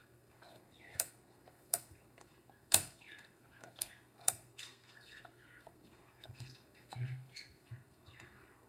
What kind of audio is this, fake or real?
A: fake